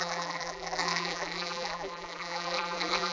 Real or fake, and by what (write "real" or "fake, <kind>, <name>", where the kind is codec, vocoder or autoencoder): fake, vocoder, BigVGAN v2